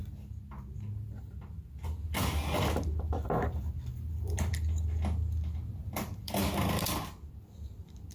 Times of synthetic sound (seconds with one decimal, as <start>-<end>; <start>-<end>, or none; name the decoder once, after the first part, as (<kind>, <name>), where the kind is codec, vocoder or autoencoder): 3.9-4.5 (vocoder, BigVGAN v2); 5.8-6.4; 7.4-8.1